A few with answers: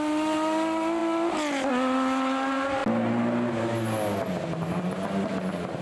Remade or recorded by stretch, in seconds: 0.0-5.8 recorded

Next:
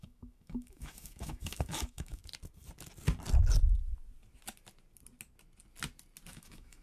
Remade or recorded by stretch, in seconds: 0.0-2.2 remade; 2.2-6.3 recorded; 6.3-6.8 remade

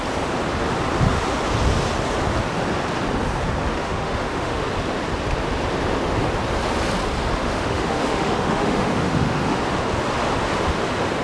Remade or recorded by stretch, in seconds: 0.0-3.7 recorded; 3.7-4.6 remade; 4.6-7.4 recorded; 7.4-9.6 remade; 9.6-11.2 recorded

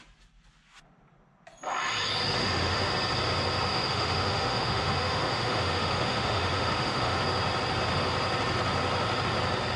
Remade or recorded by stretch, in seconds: 0.0-2.4 recorded; 2.4-2.9 remade; 2.9-3.7 recorded; 3.7-7.2 remade; 7.2-9.8 recorded

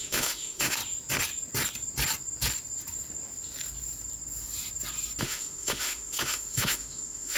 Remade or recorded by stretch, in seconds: 0.0-0.8 remade; 0.8-5.2 recorded; 5.2-7.4 remade

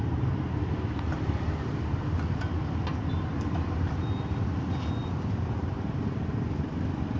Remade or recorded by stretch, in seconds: 0.0-7.2 recorded

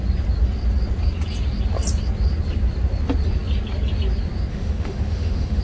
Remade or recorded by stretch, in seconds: 0.0-4.5 recorded; 4.5-5.6 remade